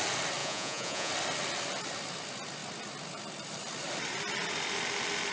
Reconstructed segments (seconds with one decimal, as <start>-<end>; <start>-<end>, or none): 0.4-1.1